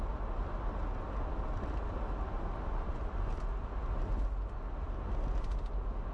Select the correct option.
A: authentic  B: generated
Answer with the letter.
A